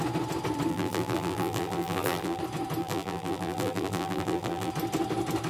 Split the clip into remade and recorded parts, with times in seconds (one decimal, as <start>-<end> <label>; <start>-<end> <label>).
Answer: 0.0-0.7 recorded; 0.7-2.4 remade; 2.4-2.8 recorded; 2.8-4.7 remade; 4.7-5.5 recorded